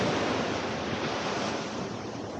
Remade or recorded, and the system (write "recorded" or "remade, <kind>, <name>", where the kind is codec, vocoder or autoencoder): recorded